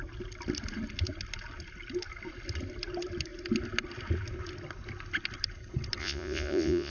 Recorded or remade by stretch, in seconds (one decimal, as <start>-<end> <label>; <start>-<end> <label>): 0.0-6.0 recorded; 6.0-6.9 remade